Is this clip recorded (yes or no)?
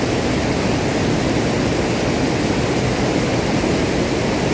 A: yes